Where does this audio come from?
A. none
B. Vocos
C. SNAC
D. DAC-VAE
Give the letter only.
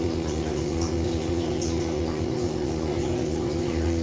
B